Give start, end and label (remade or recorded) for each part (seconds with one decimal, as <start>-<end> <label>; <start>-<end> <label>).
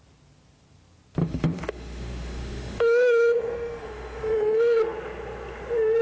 0.0-1.2 recorded; 1.2-4.8 remade; 4.8-6.0 recorded